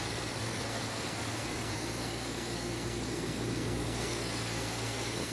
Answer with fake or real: fake